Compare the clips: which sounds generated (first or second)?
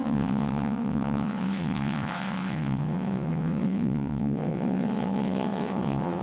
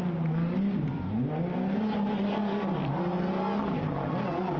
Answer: first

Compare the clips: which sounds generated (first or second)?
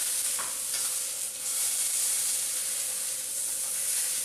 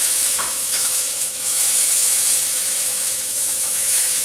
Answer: second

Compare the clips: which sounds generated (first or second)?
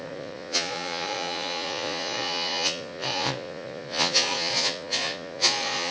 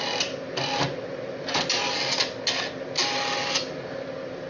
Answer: first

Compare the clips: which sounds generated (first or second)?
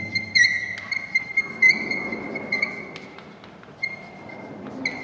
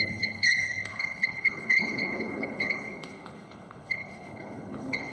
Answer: second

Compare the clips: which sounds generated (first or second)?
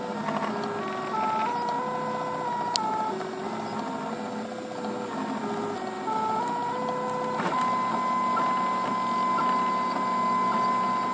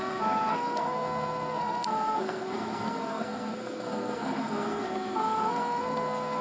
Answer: second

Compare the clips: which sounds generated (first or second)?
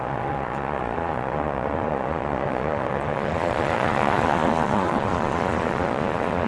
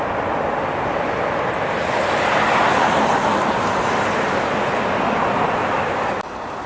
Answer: first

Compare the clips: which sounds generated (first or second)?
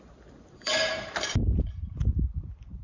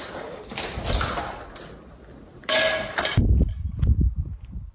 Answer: first